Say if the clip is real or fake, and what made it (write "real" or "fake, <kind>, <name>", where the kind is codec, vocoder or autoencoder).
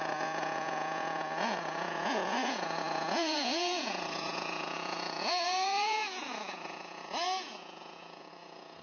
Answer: fake, vocoder, Vocos